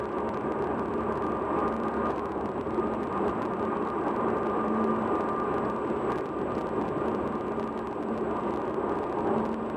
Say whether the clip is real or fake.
fake